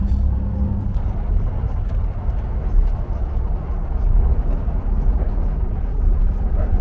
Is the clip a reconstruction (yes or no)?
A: no